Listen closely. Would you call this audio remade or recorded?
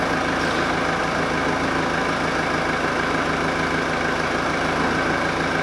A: recorded